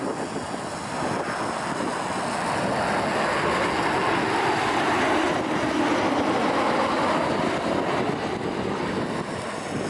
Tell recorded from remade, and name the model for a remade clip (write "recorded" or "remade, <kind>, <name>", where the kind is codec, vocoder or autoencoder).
recorded